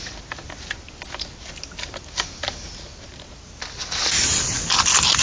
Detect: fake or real real